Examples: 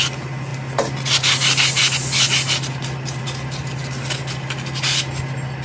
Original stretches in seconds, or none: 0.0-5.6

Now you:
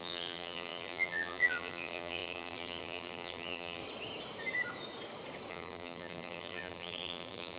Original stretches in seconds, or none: 3.8-5.5

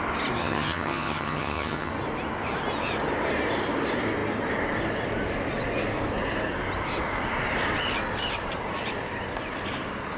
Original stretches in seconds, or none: 0.0-0.4; 1.9-10.2